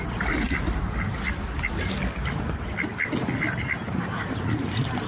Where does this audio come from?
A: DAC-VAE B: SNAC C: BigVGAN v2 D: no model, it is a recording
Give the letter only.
D